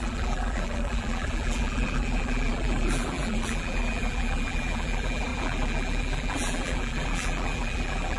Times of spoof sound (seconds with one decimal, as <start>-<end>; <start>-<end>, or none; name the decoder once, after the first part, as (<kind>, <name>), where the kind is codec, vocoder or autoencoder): 0.0-8.2 (vocoder, BigVGAN v2)